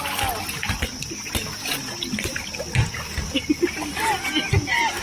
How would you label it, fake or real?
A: real